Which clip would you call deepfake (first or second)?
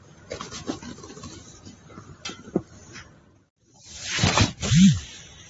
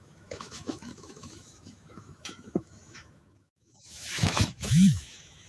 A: second